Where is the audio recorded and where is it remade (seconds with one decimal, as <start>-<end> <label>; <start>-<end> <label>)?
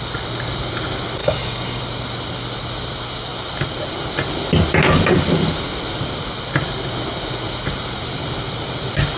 0.0-1.2 recorded; 1.2-1.8 remade; 1.8-9.2 recorded